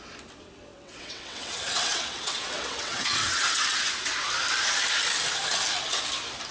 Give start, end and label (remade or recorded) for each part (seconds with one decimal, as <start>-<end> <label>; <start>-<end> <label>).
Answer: 0.0-0.7 recorded; 0.7-3.9 remade; 3.9-6.5 recorded